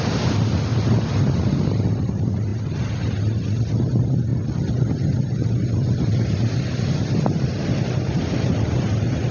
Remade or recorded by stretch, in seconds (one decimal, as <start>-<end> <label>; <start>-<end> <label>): 0.0-9.3 recorded